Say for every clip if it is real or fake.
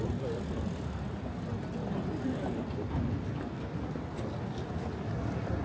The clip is real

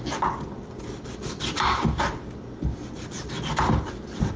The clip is real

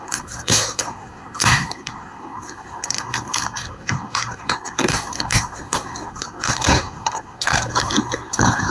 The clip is fake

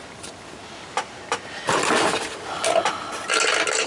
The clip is real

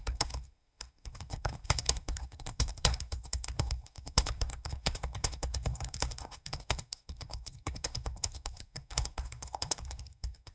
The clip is fake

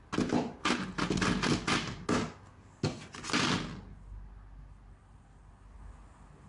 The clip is real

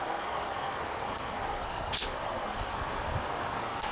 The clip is fake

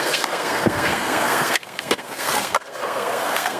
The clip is fake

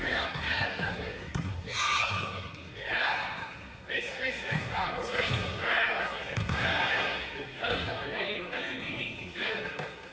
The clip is fake